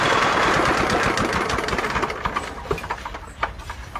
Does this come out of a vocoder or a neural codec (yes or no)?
no